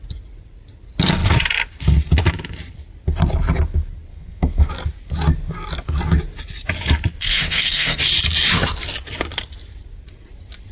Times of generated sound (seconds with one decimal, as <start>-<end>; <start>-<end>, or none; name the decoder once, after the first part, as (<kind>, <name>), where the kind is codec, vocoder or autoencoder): 4.1-4.7 (codec, SNAC); 7.2-8.0